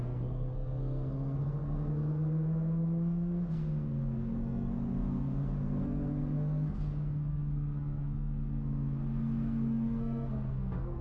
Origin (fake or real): fake